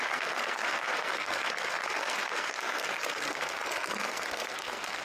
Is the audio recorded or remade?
remade